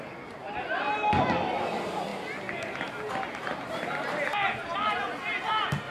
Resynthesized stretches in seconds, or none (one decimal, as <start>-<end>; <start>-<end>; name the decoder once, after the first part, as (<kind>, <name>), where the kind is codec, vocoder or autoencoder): none